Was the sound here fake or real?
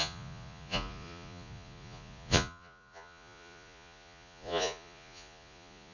fake